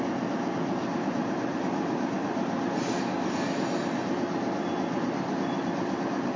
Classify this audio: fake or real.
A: real